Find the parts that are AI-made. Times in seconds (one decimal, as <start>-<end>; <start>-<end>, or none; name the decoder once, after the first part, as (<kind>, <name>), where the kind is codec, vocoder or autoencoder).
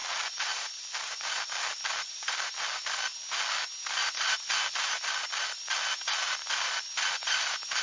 0.0-2.5 (vocoder, BigVGAN v2); 4.0-5.0